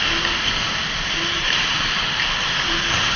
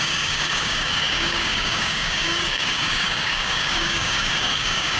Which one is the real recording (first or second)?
first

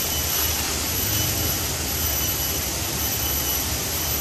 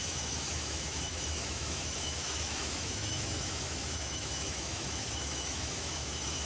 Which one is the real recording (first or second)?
first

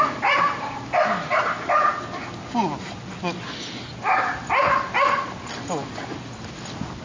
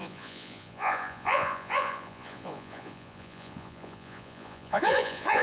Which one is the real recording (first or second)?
first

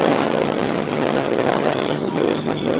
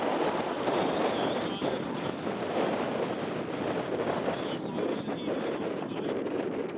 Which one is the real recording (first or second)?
second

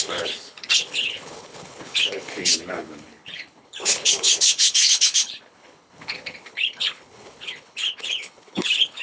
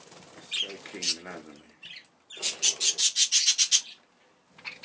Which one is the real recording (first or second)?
second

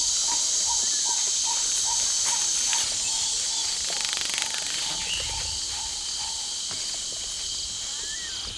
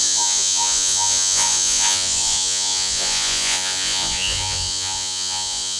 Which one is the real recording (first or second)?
first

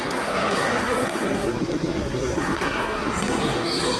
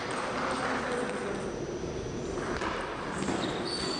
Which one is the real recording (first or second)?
second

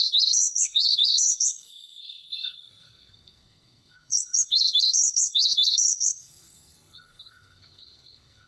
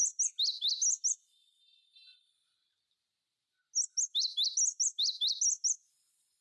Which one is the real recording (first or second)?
second